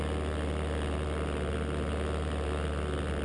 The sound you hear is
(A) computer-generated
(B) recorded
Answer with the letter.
B